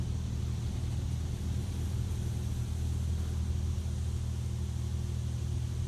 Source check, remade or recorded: recorded